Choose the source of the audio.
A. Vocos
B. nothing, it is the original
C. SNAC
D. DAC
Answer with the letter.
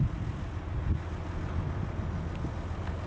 B